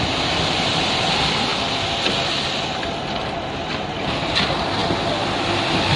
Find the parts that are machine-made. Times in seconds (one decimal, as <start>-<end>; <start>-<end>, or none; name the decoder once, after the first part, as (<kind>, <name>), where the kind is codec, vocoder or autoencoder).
none

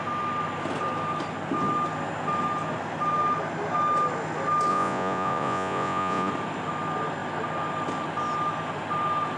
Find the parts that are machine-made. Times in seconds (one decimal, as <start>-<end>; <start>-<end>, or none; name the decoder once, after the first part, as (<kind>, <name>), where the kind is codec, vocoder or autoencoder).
4.7-6.3 (vocoder, Vocos)

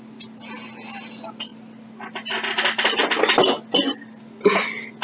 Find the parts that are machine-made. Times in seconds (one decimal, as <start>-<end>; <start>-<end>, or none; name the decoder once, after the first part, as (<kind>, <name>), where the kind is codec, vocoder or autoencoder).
none

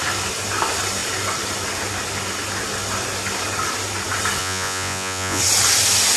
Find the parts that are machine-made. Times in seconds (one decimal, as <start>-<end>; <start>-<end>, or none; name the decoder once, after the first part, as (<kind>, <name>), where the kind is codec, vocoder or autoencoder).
4.4-5.4 (vocoder, Vocos)

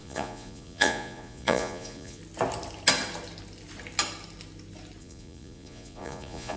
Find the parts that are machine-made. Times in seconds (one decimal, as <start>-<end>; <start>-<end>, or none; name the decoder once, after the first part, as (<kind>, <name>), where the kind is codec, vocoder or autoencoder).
0.0-2.2 (vocoder, Vocos); 5.0-6.6

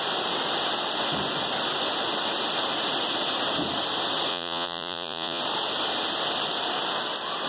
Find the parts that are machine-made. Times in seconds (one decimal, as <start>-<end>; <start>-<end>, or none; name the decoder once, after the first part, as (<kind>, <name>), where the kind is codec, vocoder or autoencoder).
4.3-5.4 (vocoder, Vocos)

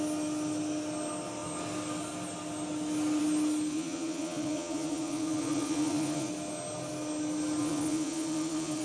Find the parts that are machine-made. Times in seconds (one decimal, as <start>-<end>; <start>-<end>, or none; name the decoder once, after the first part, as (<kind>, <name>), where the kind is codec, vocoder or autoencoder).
3.7-6.3 (vocoder, Vocos); 7.6-8.8